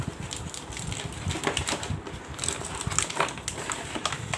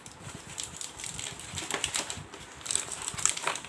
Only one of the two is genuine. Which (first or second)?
first